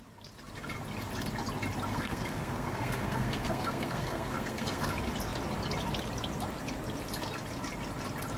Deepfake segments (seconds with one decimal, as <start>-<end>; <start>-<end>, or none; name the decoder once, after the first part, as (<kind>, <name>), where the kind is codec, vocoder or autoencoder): 1.9-4.8 (codec, SNAC)